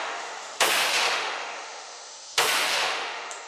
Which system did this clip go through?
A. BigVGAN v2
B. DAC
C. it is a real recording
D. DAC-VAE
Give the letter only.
D